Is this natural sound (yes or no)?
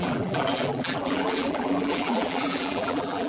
no